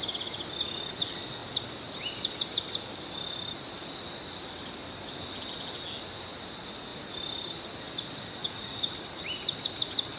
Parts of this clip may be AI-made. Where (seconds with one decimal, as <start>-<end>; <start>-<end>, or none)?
8.4-8.9

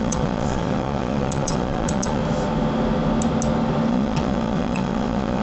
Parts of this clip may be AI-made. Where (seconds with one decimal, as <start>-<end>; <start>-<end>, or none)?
0.0-2.2; 3.9-5.4